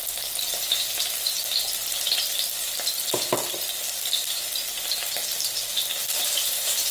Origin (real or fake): real